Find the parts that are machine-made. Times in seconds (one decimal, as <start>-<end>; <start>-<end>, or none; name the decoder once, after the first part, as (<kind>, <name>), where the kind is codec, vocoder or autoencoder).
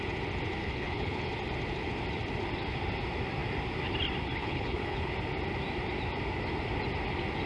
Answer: 0.6-1.3 (codec, HILCodec); 4.4-5.1